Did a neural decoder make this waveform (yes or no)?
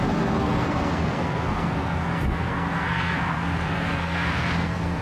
yes